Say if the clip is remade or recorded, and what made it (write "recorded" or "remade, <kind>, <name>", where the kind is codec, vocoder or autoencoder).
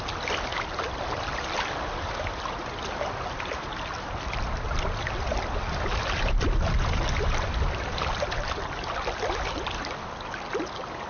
recorded